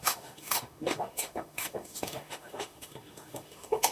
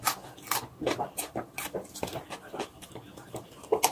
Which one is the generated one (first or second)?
first